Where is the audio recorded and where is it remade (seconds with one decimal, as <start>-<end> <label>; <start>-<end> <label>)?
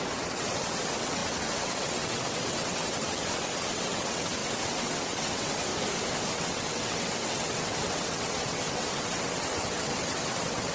0.0-5.7 remade; 5.7-6.3 recorded; 6.3-10.7 remade